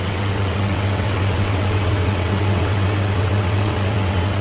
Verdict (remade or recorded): remade